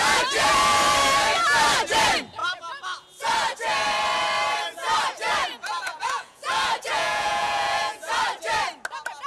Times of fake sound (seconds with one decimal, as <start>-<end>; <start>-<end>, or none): 5.4-8.1